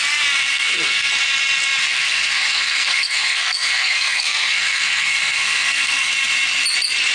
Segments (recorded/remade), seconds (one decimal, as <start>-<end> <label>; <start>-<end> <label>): 0.0-0.5 recorded; 0.5-1.1 remade; 1.1-1.8 recorded; 1.8-6.1 remade; 6.1-7.1 recorded

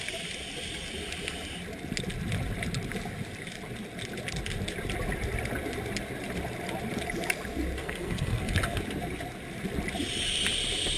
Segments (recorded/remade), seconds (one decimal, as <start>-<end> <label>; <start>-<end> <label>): 0.0-7.8 recorded; 7.8-8.8 remade; 8.8-11.0 recorded

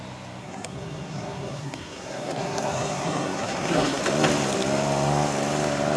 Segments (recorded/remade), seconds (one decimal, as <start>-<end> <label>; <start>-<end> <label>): 0.0-0.4 recorded; 0.4-4.0 remade; 4.0-6.0 recorded